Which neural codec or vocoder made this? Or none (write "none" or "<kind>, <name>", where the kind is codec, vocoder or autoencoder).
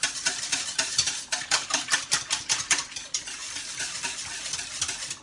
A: none